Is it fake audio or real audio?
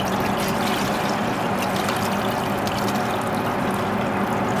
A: real